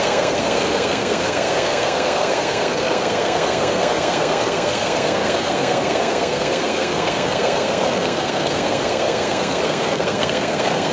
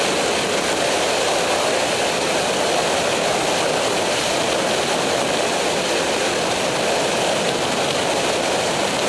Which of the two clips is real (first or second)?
second